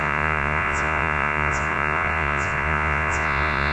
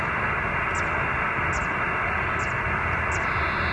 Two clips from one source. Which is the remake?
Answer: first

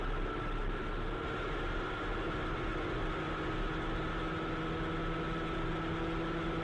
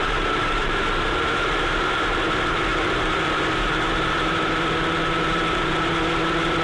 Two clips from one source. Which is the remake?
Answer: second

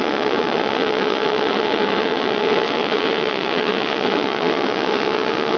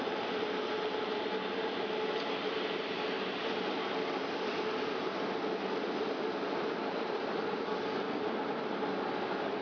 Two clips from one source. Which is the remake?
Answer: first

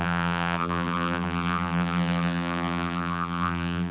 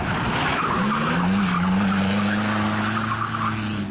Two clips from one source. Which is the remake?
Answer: first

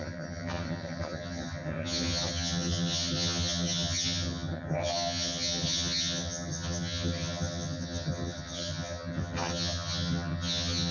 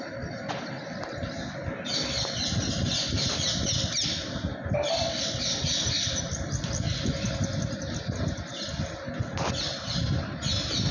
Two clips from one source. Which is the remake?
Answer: first